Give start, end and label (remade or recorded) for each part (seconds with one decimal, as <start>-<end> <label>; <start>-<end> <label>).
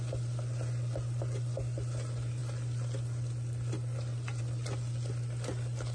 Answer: 0.0-5.9 recorded